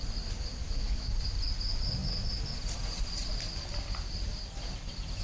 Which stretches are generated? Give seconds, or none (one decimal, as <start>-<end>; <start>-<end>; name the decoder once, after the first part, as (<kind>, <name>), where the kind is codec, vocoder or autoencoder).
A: 0.6-1.1 (autoencoder, DAC-VAE)